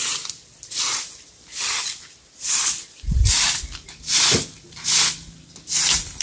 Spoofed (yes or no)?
no